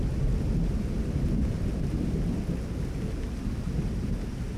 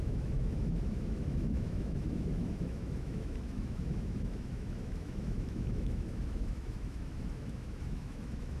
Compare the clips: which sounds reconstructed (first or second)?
second